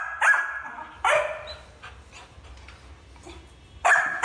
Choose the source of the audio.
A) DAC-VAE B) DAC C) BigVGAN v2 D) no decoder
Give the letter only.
D